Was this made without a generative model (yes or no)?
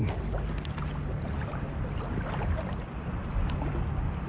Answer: yes